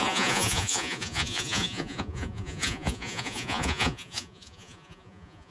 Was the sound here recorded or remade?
remade